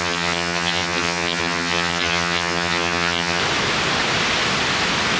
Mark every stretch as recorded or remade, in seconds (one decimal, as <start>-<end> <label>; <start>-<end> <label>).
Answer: 0.0-3.4 remade; 3.4-5.2 recorded